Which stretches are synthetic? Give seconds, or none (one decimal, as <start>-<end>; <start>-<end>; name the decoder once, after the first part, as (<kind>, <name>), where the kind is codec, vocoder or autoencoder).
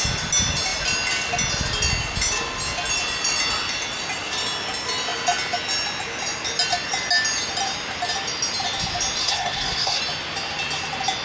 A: 9.2-10.0 (codec, SNAC)